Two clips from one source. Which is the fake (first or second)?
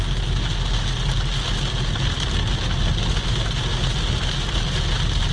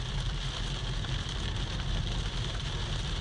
second